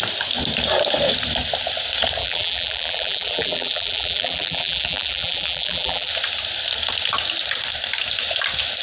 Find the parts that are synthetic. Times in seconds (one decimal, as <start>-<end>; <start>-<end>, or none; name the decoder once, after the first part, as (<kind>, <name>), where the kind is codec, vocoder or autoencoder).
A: 2.2-6.1 (vocoder, BigVGAN v2)